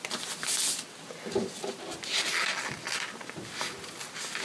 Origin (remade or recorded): recorded